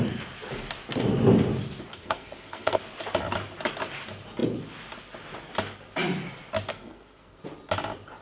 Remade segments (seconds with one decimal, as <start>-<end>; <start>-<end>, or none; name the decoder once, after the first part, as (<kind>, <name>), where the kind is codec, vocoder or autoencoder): 1.9-2.8 (codec, SNAC); 6.7-7.4